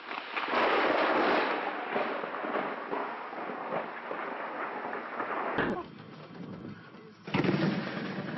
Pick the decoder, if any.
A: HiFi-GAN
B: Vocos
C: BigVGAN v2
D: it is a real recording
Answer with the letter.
D